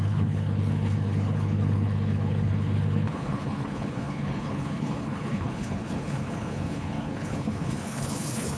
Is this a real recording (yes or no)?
no